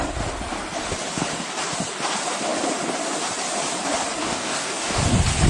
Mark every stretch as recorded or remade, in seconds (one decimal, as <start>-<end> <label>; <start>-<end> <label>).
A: 0.0-4.2 recorded; 4.2-5.0 remade; 5.0-5.5 recorded